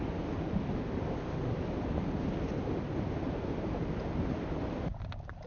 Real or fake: real